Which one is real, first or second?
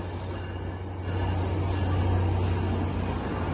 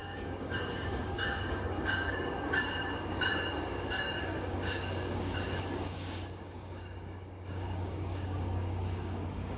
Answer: first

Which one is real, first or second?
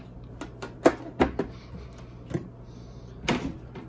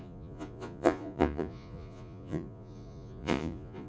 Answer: first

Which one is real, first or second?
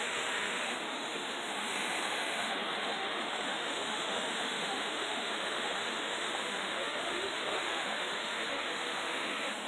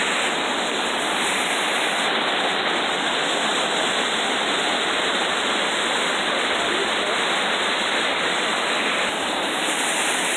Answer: second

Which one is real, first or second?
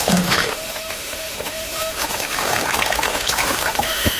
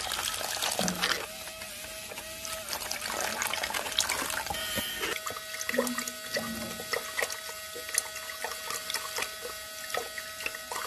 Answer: second